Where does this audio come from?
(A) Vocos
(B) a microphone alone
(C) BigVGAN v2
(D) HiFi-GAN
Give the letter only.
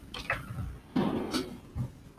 B